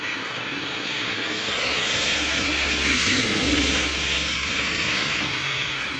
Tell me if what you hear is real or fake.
fake